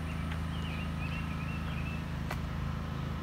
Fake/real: real